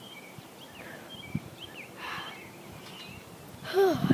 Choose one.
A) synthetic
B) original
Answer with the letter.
A